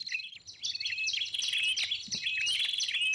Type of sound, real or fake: real